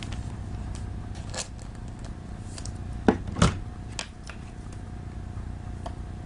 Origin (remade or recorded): recorded